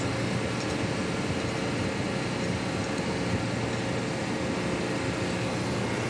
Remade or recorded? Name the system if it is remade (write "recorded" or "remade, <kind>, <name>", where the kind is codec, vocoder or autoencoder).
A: recorded